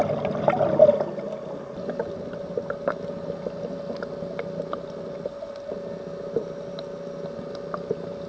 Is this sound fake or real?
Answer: real